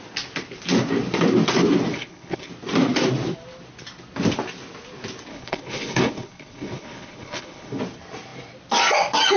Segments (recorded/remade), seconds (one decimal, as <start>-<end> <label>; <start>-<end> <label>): 0.0-1.9 recorded; 1.9-2.5 remade; 2.5-5.3 recorded; 5.3-7.8 remade; 7.8-9.4 recorded